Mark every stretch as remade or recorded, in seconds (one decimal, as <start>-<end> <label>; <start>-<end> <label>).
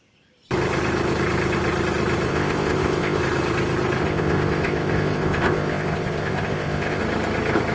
0.0-2.3 recorded; 2.3-3.2 remade; 3.2-4.0 recorded; 4.0-7.0 remade; 7.0-7.7 recorded